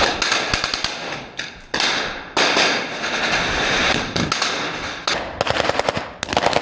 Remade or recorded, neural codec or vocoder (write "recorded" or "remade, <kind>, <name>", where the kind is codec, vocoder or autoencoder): recorded